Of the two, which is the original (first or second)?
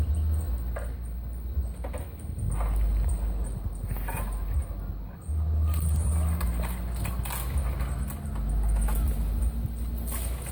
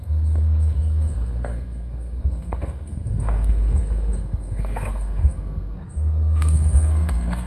first